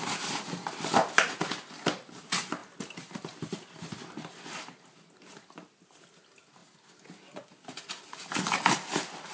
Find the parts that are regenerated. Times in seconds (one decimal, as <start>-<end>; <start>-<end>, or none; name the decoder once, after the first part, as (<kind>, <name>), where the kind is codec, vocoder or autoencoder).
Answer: none